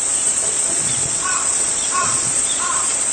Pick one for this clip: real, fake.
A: fake